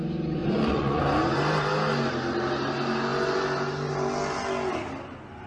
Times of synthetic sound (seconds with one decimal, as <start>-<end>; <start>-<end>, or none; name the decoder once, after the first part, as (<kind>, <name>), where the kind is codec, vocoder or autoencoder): 0.4-1.0 (vocoder, Vocos)